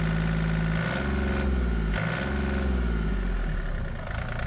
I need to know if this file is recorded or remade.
recorded